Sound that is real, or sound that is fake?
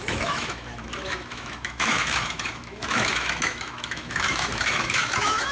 fake